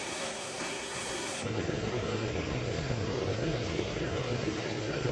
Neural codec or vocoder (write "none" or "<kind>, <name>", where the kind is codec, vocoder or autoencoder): codec, SNAC